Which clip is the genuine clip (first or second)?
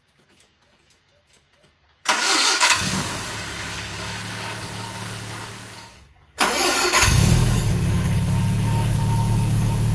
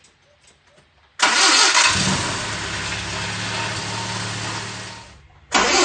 second